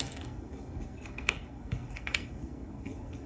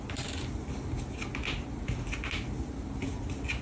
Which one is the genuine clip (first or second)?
second